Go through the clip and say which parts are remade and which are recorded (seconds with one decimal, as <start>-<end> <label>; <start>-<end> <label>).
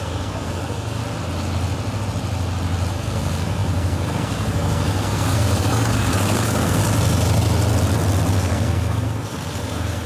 0.0-1.0 remade; 1.0-2.9 recorded; 2.9-6.8 remade; 6.8-8.3 recorded; 8.3-10.1 remade